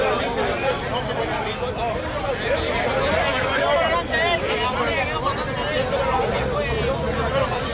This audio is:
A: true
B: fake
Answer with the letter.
A